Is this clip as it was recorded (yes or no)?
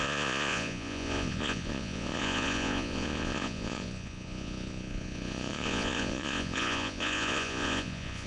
no